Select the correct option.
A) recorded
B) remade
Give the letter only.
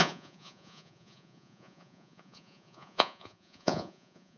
B